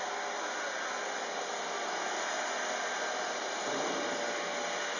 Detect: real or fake real